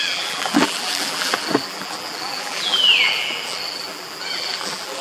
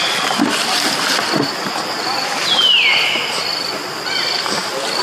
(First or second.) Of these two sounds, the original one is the second